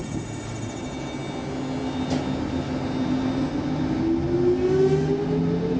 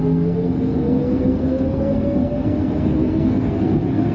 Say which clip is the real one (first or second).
first